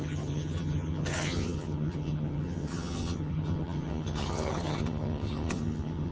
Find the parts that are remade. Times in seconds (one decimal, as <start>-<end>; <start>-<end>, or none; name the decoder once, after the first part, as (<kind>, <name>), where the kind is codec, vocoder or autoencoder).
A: 0.0-6.1 (vocoder, HiFi-GAN)